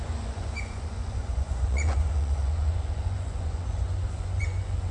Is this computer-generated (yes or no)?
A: yes